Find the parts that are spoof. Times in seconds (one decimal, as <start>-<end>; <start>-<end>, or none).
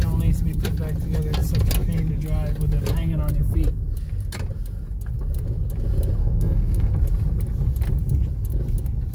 6.2-6.9